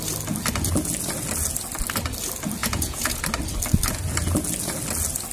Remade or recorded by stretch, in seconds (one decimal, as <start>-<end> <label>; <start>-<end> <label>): 0.0-2.6 recorded; 2.6-3.2 remade; 3.2-5.3 recorded